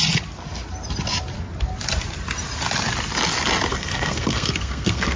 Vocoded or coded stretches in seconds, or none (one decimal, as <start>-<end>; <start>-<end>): 3.7-5.2